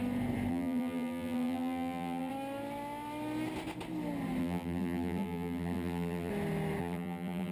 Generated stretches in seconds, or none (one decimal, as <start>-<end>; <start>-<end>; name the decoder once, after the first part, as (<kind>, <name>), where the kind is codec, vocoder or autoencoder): 0.5-2.3 (vocoder, BigVGAN v2); 4.4-6.3; 6.8-7.5